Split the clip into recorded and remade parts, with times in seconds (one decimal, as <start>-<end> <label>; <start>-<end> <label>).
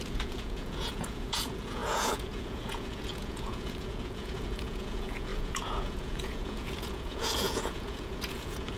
0.0-8.8 remade